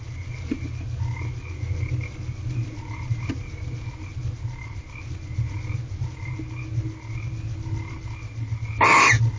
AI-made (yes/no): no